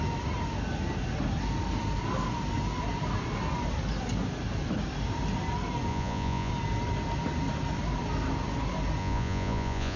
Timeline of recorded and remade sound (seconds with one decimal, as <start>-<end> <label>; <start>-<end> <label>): 0.0-5.9 recorded; 5.9-6.5 remade; 6.5-9.0 recorded; 9.0-10.0 remade